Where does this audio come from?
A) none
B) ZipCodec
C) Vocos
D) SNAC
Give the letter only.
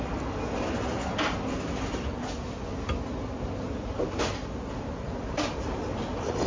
A